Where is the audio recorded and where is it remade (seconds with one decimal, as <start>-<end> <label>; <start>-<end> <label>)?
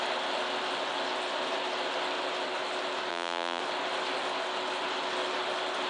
0.0-3.1 recorded; 3.1-3.6 remade; 3.6-5.9 recorded